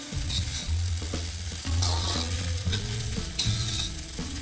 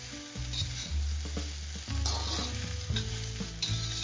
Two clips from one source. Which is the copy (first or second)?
first